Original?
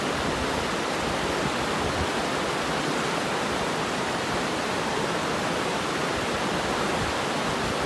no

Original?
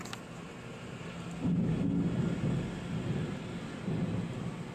yes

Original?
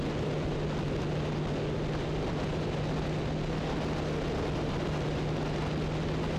yes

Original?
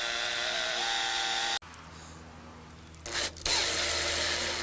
yes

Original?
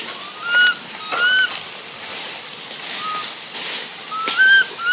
yes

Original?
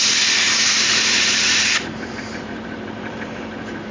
no